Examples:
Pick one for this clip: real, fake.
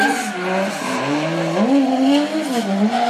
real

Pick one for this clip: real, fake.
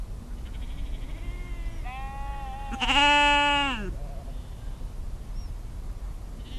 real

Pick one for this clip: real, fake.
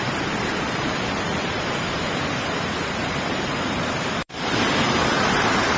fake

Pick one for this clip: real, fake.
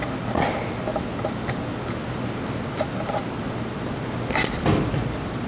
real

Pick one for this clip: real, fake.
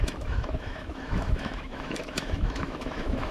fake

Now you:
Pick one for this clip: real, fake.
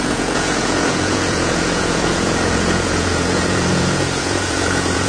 fake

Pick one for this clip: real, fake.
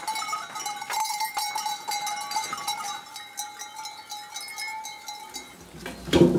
real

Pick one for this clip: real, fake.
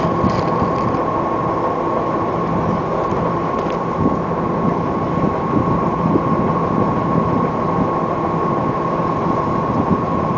real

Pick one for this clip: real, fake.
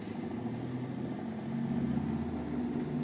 real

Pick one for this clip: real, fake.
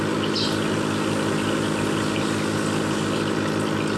real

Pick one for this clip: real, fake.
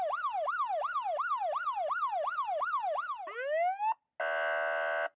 real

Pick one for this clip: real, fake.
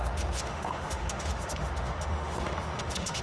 fake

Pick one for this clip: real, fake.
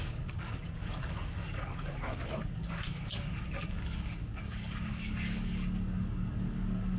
fake